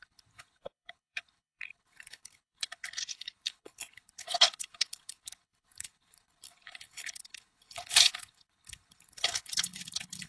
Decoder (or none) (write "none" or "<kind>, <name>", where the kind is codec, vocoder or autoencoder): codec, HILCodec